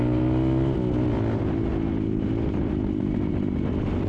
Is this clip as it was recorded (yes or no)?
yes